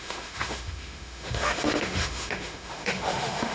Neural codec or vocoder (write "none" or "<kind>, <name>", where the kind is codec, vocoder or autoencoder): autoencoder, DAC-VAE